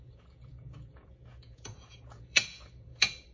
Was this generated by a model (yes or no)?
yes